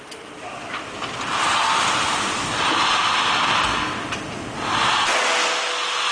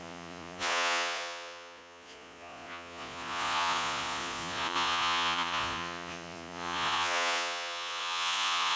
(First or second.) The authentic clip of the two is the first